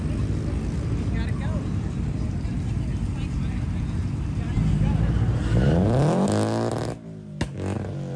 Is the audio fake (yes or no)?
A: no